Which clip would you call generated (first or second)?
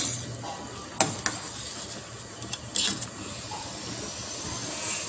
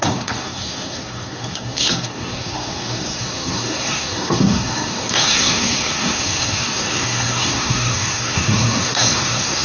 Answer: second